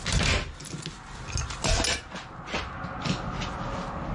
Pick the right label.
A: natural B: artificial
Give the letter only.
A